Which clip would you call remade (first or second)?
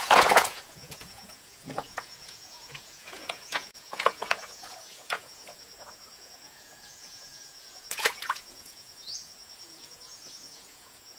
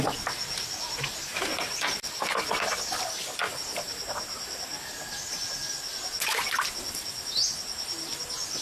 first